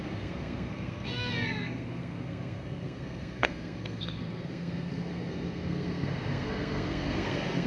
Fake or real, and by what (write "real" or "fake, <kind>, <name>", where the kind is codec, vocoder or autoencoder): fake, codec, SNAC